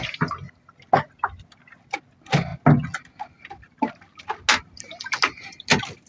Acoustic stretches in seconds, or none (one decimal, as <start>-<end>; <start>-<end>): 0.0-6.1